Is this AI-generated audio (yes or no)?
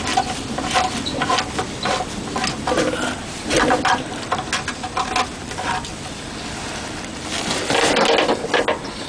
no